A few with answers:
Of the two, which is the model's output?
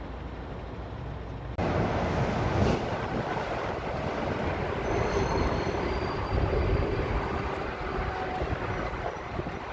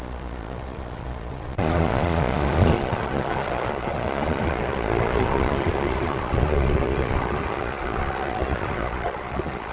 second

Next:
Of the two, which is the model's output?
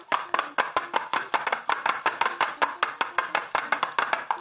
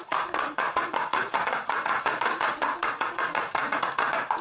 second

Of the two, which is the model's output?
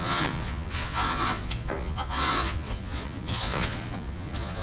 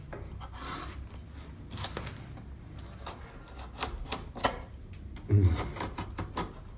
first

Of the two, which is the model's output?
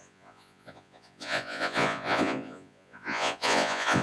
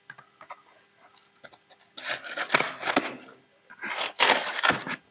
first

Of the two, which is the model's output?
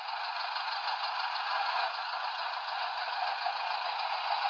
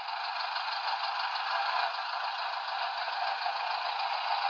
first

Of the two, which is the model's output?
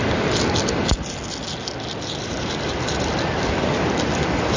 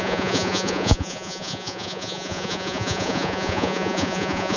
second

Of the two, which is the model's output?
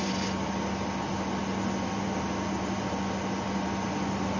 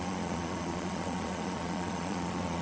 second